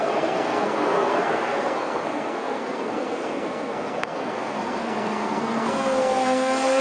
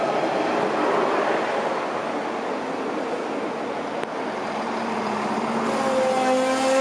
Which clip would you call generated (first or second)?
first